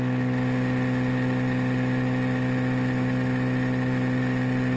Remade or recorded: recorded